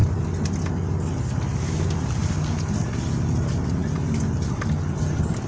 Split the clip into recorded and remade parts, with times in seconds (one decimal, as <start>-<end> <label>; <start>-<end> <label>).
0.0-5.5 recorded